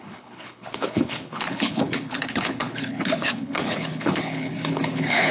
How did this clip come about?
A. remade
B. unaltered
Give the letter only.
A